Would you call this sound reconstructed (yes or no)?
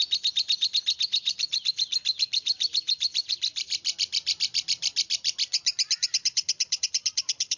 no